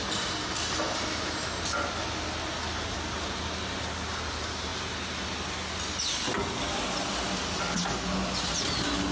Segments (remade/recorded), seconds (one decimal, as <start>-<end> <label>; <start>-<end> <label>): 0.0-9.1 recorded